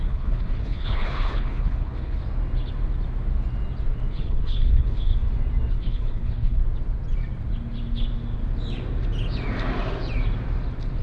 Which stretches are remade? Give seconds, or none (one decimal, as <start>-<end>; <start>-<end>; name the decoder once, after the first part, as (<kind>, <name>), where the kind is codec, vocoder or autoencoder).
0.0-2.2 (codec, HILCodec); 4.1-5.1; 5.7-6.6